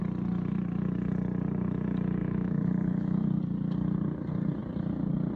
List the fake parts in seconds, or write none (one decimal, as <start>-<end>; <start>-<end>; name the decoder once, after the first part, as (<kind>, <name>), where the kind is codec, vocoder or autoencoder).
2.2-3.4 (autoencoder, DAC-VAE)